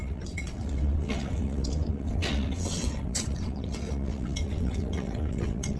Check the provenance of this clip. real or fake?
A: fake